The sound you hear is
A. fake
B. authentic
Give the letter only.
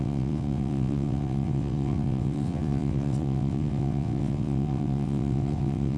A